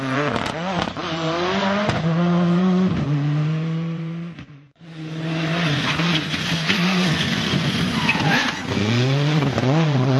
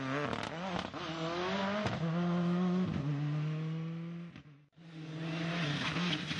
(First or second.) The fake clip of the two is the first